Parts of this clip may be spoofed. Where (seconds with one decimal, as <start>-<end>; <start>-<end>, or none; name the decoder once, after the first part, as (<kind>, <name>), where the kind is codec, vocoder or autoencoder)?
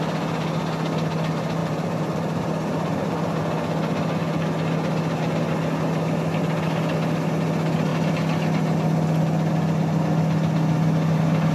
1.6-3.4 (vocoder, BigVGAN v2)